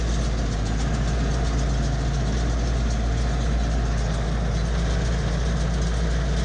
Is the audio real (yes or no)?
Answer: yes